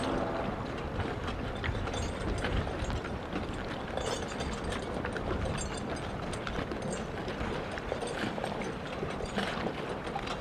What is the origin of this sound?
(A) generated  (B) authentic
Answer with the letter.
B